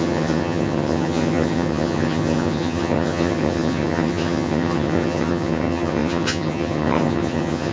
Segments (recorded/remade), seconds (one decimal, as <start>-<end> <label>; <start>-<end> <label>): 0.0-7.7 remade